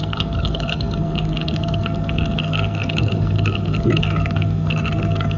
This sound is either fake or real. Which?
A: fake